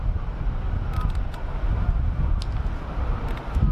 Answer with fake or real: real